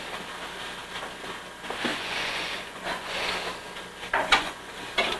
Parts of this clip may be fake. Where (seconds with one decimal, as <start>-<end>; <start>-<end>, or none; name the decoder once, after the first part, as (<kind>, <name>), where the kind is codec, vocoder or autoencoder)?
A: 1.9-3.3 (vocoder, Vocos); 4.2-4.7